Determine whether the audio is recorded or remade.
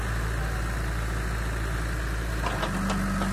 recorded